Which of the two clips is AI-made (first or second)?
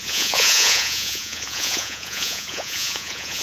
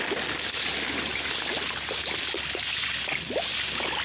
first